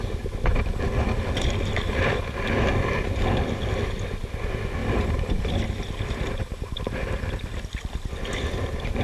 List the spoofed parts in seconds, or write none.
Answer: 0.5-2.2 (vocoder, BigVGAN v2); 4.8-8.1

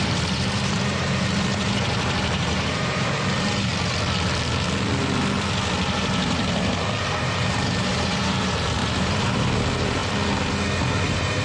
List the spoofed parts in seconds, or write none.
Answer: 0.0-3.7 (vocoder, BigVGAN v2); 5.9-10.0; 10.8-11.4